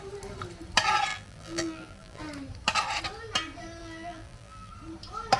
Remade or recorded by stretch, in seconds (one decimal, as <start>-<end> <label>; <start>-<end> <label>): 0.0-1.1 recorded; 1.1-2.2 remade; 2.2-3.8 recorded; 3.8-4.7 remade; 4.7-5.4 recorded